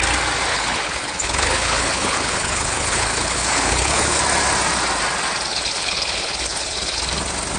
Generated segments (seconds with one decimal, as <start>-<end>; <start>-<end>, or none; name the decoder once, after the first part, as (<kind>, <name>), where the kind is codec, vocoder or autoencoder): 0.5-4.2 (codec, HILCodec); 5.5-7.0